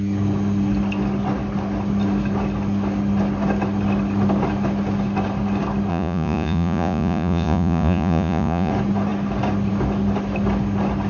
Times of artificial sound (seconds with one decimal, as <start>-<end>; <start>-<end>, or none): 5.9-8.7